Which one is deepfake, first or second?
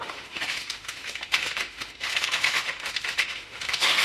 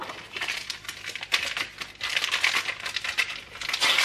first